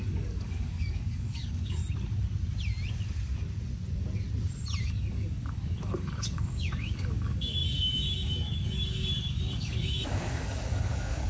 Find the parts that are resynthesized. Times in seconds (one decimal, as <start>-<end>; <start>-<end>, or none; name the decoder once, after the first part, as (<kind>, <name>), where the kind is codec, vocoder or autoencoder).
0.0-1.8 (codec, DAC); 4.8-11.3